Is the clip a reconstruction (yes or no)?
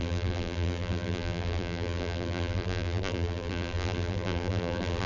yes